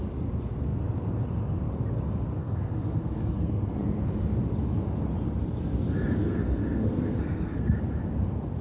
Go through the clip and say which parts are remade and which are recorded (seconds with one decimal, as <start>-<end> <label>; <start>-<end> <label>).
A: 0.0-2.4 recorded; 2.4-3.8 remade; 3.8-6.2 recorded; 6.2-7.8 remade; 7.8-8.6 recorded